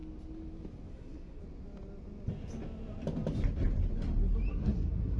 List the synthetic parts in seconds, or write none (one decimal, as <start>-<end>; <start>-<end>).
0.9-1.4; 4.5-5.2